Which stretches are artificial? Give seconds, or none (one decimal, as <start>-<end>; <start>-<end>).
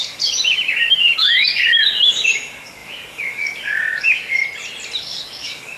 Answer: 0.0-4.4; 5.0-5.8